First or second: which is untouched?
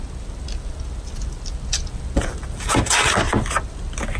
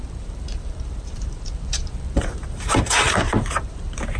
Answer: first